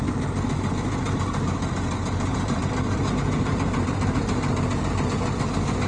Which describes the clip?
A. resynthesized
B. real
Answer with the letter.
B